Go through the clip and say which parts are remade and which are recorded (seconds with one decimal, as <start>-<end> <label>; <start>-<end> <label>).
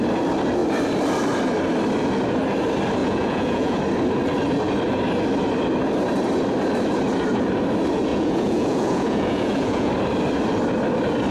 0.0-3.0 recorded; 3.0-3.8 remade; 3.8-8.1 recorded; 8.1-9.9 remade; 9.9-11.3 recorded